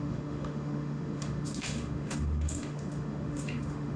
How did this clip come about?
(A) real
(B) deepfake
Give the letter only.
B